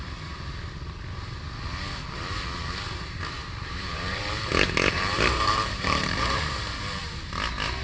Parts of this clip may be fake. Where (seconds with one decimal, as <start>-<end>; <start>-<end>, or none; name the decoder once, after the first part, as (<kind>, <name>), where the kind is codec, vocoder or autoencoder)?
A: 3.0-6.6 (vocoder, BigVGAN v2)